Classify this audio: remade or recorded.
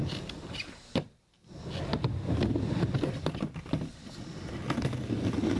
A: recorded